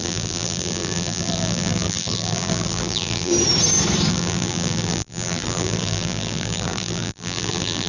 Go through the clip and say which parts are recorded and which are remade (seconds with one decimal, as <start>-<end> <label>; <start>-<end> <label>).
0.0-3.3 remade; 3.3-4.1 recorded; 4.1-7.9 remade